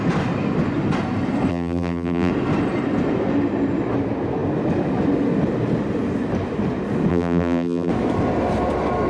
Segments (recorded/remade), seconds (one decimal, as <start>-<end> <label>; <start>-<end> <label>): 0.0-1.5 recorded; 1.5-2.3 remade; 2.3-7.1 recorded; 7.1-7.9 remade; 7.9-9.1 recorded